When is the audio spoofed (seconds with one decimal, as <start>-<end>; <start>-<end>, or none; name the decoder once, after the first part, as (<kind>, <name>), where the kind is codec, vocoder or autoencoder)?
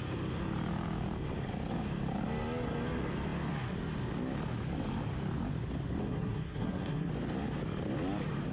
6.0-7.1 (codec, SNAC)